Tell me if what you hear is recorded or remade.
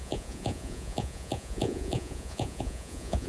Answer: remade